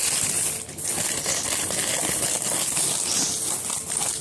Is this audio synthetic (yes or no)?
no